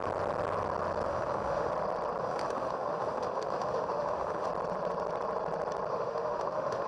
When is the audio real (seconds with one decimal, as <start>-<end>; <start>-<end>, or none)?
0.0-1.1; 1.7-2.2; 4.5-5.9